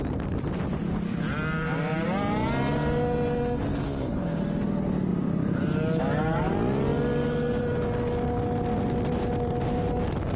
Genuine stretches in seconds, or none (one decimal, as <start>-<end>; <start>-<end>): 0.0-3.7; 4.4-10.4